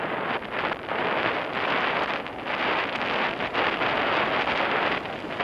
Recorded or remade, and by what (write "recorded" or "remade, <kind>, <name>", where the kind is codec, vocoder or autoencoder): recorded